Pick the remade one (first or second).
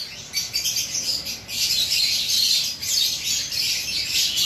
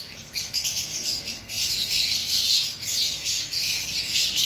second